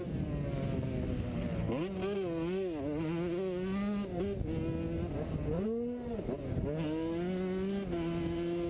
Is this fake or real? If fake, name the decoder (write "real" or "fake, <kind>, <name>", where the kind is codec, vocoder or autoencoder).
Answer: real